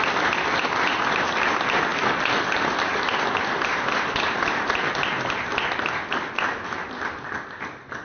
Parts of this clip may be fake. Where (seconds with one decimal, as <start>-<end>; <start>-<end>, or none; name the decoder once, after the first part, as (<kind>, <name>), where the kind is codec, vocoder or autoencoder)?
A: none